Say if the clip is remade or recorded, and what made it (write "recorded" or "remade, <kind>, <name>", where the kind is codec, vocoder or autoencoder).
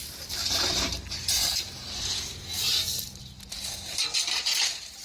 recorded